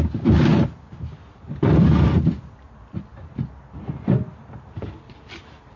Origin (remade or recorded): recorded